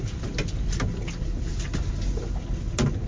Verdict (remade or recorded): recorded